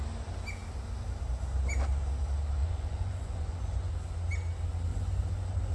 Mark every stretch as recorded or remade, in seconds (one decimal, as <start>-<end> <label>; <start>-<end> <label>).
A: 0.0-2.6 recorded; 2.6-3.9 remade; 3.9-4.9 recorded; 4.9-5.7 remade